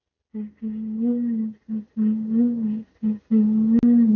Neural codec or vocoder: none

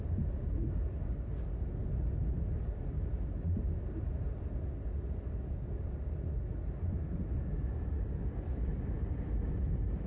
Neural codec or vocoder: none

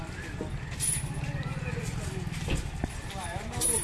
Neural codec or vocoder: none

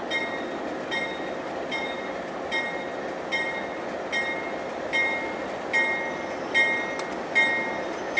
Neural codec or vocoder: none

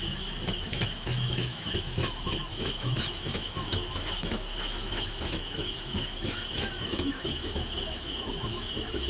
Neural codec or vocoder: autoencoder, DAC-VAE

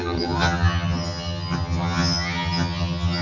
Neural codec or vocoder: vocoder, HiFi-GAN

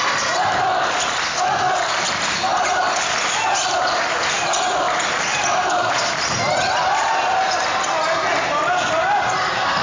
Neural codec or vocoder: none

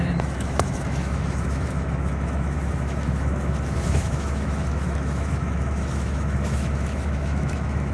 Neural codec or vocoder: autoencoder, DAC-VAE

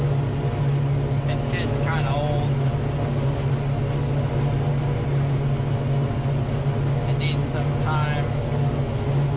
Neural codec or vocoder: none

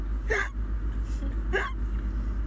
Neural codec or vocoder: none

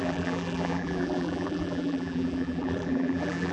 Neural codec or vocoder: vocoder, BigVGAN v2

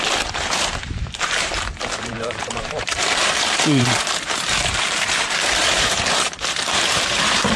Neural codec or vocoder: vocoder, BigVGAN v2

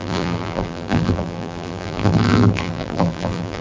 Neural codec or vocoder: vocoder, BigVGAN v2